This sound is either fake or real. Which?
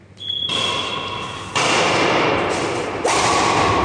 real